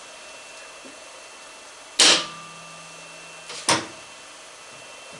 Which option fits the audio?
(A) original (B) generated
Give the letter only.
A